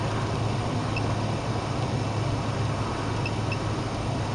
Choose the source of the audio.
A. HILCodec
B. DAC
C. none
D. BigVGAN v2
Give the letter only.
C